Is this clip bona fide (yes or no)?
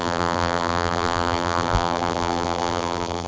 no